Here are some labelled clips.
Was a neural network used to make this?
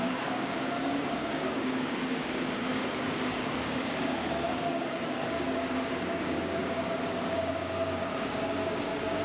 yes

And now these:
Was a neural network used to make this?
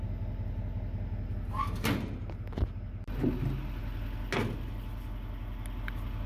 no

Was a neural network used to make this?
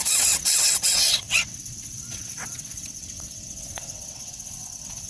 yes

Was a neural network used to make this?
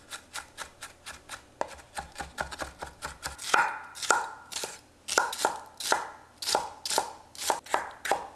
no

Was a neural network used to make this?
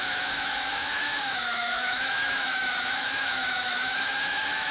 yes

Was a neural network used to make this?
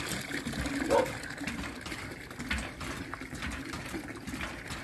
no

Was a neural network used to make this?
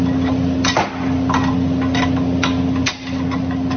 no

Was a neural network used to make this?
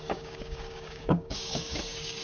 yes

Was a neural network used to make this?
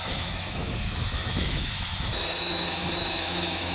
yes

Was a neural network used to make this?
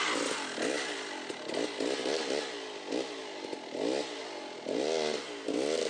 no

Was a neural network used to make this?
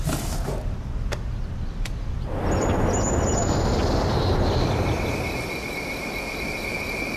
no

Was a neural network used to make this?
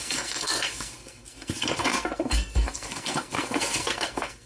yes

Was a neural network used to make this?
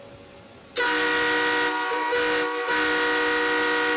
no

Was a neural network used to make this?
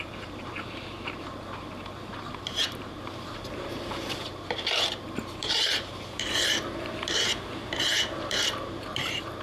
yes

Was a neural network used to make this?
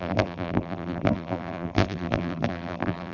yes